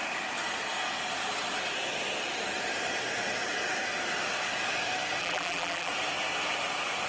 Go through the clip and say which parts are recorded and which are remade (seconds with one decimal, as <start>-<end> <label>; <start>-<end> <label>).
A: 0.0-5.2 recorded; 5.2-5.9 remade; 5.9-7.1 recorded